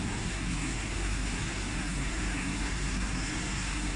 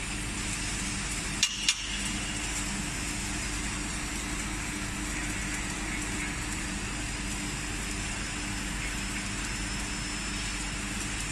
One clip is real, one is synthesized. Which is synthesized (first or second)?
first